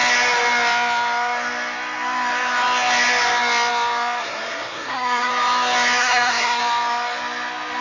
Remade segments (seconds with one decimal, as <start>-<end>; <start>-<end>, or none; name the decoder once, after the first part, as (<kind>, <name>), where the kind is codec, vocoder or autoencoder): 4.2-5.3 (codec, SNAC); 6.0-6.6